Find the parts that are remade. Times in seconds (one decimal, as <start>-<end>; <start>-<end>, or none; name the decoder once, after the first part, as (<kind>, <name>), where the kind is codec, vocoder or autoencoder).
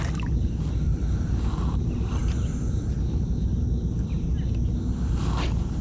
none